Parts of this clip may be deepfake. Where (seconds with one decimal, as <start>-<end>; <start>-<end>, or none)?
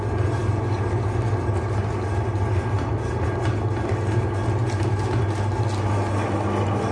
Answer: none